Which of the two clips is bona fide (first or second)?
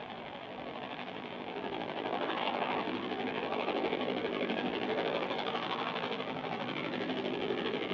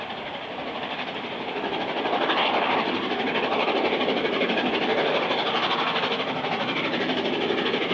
second